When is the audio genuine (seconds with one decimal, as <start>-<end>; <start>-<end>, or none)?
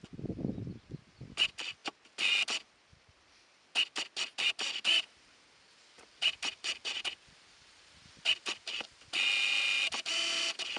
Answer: 0.0-4.3; 8.1-10.8